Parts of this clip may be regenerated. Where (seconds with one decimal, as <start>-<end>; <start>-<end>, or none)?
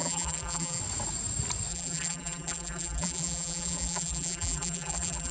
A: 0.0-0.8; 1.7-5.3